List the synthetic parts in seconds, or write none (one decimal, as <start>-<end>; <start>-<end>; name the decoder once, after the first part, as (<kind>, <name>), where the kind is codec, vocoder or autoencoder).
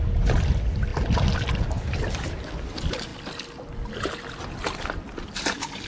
none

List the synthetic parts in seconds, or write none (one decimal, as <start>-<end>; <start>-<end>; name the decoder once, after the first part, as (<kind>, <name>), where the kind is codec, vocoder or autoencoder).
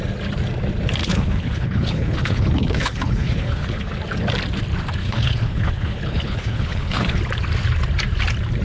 1.0-3.9 (codec, HILCodec); 5.0-7.2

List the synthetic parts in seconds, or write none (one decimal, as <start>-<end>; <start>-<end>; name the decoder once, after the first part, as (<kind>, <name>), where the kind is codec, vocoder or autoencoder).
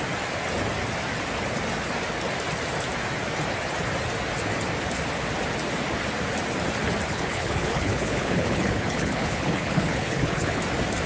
7.1-10.6 (codec, HILCodec)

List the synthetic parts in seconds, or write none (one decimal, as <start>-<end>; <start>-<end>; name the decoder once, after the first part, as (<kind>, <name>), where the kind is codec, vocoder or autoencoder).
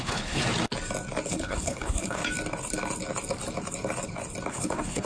0.0-0.4 (codec, HILCodec); 1.3-2.2; 4.5-5.1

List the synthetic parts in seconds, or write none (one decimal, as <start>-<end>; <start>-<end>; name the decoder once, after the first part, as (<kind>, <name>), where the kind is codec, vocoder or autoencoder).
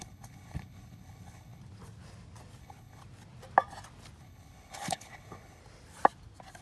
0.0-1.6 (codec, HILCodec); 2.6-3.0; 4.2-5.6